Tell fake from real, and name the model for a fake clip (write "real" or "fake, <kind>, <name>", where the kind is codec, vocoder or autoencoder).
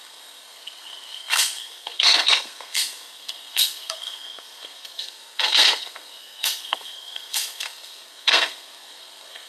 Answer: fake, codec, SNAC